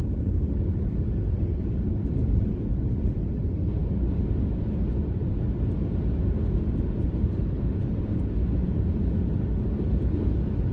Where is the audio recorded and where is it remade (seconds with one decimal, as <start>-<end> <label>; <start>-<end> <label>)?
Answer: 0.0-10.7 recorded